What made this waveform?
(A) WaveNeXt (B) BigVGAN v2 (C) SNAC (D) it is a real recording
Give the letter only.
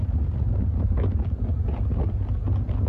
D